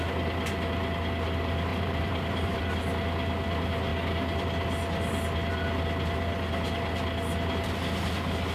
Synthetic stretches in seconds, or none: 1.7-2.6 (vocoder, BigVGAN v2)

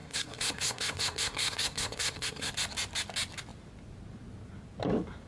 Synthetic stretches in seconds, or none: 0.0-2.5 (codec, SNAC)

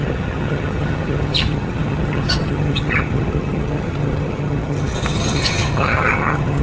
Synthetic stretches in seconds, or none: 0.0-6.6 (vocoder, HiFi-GAN)

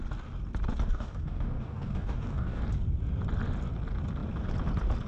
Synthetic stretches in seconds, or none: 0.9-2.6 (codec, DAC)

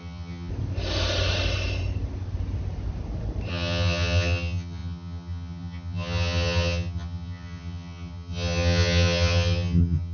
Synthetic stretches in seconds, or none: 0.0-0.5 (vocoder, HiFi-GAN); 3.5-10.1